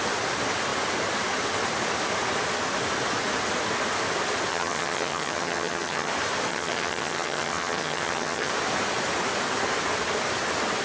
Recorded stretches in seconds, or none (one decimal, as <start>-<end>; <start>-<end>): 0.0-4.5; 6.1-6.5; 8.5-10.8